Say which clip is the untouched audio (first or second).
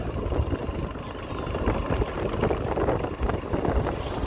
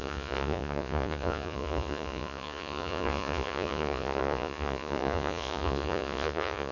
first